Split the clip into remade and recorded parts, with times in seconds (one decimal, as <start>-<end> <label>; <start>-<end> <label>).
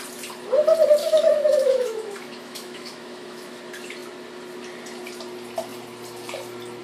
0.0-1.0 recorded; 1.0-3.6 remade; 3.6-6.8 recorded